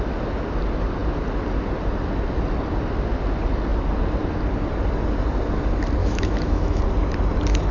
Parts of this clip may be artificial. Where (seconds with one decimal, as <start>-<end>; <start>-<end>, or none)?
6.0-6.8